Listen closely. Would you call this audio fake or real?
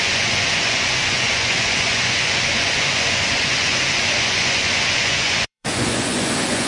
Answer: fake